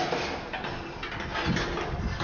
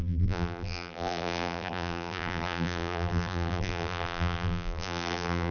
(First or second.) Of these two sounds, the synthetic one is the second